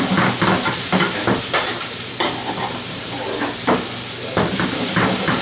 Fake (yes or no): no